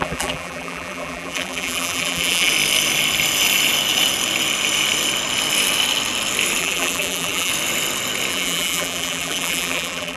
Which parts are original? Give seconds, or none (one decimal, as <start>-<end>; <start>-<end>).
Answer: 2.5-6.6; 7.5-8.3